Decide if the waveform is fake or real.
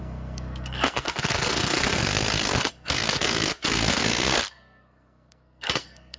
fake